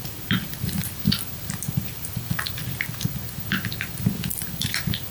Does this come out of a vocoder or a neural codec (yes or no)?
yes